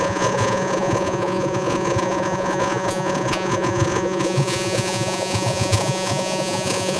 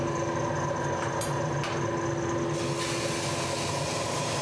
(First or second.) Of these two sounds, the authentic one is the second